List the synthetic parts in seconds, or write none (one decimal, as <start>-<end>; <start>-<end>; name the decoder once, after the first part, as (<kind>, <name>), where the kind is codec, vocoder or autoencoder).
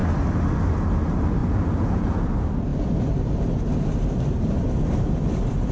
1.4-2.3 (vocoder, Vocos)